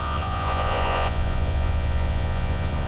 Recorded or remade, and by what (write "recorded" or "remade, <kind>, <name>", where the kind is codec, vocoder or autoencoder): remade, vocoder, Vocos